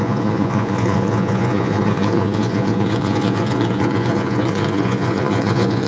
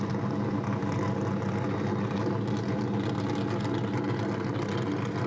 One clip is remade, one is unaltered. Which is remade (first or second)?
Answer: first